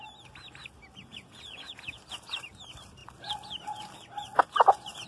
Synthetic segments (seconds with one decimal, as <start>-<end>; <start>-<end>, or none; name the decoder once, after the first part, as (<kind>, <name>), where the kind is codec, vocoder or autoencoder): 1.1-2.0 (vocoder, Vocos)